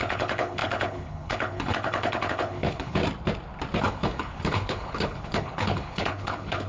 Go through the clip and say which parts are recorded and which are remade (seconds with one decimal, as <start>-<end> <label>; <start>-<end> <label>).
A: 0.0-3.0 remade; 3.0-3.8 recorded; 3.8-6.7 remade